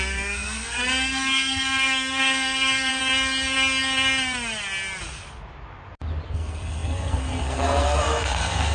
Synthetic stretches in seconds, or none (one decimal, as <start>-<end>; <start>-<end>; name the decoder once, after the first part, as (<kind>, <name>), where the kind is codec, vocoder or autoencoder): 0.0-2.9 (codec, SNAC); 6.3-8.7